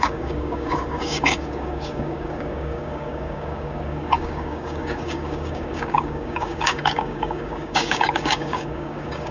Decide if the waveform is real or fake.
fake